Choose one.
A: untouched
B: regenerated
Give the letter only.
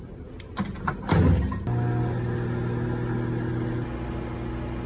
A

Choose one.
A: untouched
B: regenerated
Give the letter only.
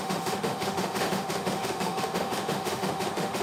B